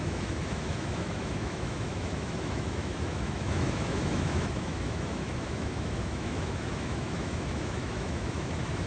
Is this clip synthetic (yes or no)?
yes